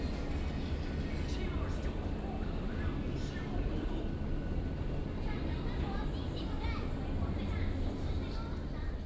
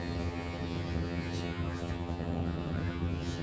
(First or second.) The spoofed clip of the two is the second